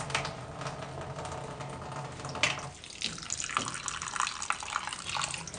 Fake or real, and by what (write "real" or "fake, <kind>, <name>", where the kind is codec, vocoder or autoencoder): real